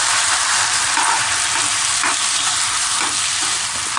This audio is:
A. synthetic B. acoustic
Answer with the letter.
B